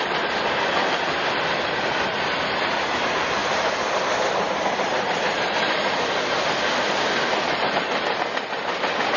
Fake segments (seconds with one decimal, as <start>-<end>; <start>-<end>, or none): none